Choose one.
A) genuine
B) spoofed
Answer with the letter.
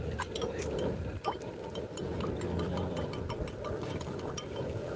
B